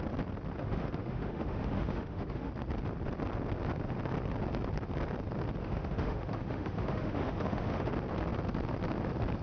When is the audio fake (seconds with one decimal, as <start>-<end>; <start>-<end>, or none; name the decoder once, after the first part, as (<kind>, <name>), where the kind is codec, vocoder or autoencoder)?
0.6-2.5 (autoencoder, DAC-VAE); 5.6-7.9